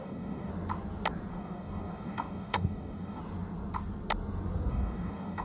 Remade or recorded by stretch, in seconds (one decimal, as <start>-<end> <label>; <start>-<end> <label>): 0.0-0.5 remade; 0.5-1.3 recorded; 1.3-3.2 remade; 3.2-4.7 recorded; 4.7-5.4 remade